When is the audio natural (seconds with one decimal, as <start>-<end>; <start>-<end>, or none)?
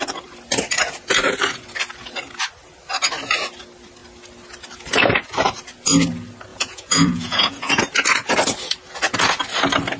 0.0-6.5; 7.8-10.0